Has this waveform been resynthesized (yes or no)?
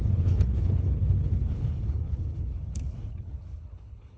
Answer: yes